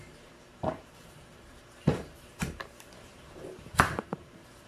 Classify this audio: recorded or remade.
remade